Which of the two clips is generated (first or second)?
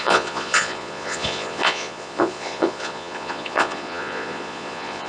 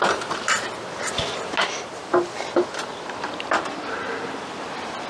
first